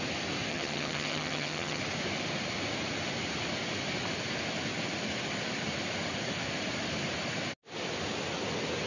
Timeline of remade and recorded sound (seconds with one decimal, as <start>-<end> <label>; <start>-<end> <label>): 0.0-0.5 recorded; 0.5-1.8 remade; 1.8-8.9 recorded

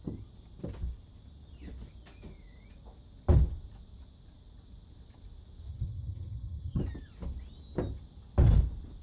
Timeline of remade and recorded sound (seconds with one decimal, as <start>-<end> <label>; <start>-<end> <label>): 0.0-5.7 recorded; 5.7-6.8 remade; 6.8-9.0 recorded

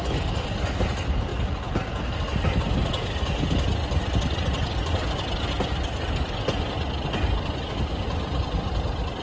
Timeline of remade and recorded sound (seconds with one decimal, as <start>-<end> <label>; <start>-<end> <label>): 0.0-9.2 recorded

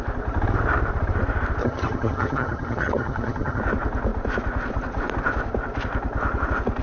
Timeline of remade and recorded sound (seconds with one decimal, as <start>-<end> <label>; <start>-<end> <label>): 0.0-1.6 recorded; 1.6-3.6 remade; 3.6-6.8 recorded